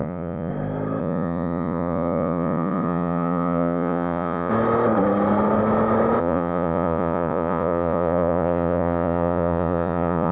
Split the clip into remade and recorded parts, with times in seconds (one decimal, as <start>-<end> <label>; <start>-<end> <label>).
0.0-0.5 remade; 0.5-1.0 recorded; 1.0-4.5 remade; 4.5-6.2 recorded; 6.2-10.3 remade